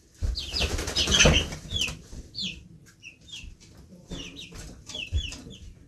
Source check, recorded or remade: recorded